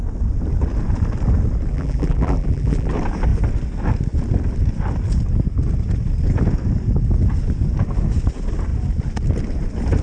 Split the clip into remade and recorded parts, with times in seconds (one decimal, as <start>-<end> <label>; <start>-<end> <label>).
0.0-1.7 recorded; 1.7-2.9 remade; 2.9-10.0 recorded